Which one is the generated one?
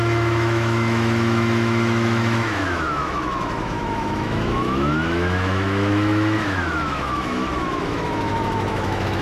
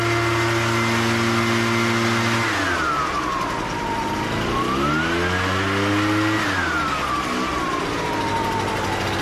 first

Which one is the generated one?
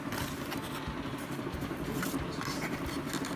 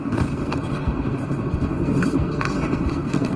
second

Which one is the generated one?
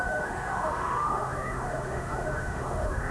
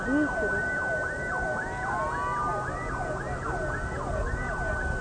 first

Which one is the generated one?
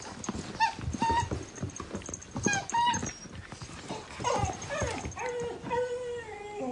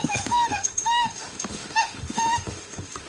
second